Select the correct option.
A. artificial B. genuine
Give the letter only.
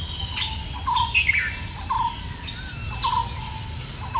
B